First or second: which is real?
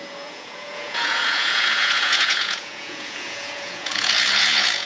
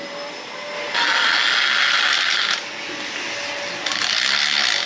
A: second